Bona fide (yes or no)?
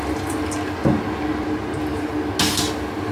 yes